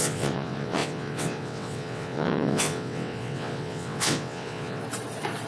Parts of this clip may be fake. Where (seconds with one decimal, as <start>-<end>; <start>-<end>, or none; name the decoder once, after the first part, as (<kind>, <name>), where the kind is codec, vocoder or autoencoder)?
0.0-4.8 (vocoder, WaveNeXt)